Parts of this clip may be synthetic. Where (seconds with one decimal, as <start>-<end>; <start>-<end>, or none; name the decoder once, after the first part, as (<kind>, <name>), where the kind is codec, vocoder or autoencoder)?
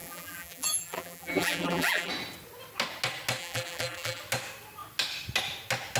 0.0-2.1 (vocoder, BigVGAN v2); 3.4-4.2